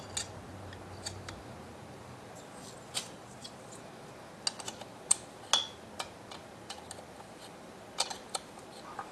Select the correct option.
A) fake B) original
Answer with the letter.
B